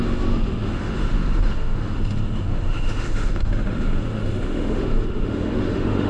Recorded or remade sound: remade